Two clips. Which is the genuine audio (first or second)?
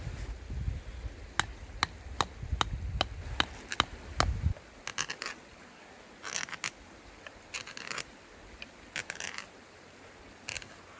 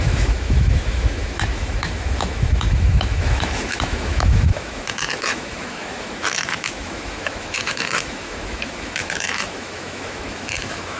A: first